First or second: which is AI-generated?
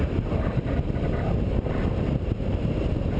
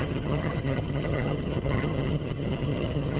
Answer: second